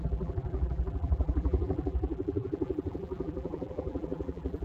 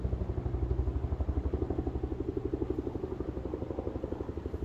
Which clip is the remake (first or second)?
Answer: first